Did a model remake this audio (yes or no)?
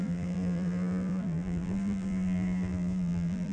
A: yes